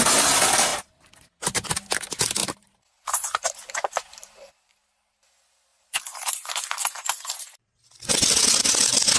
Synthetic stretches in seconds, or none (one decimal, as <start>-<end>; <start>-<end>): 0.7-1.3; 2.4-4.7; 5.7-6.5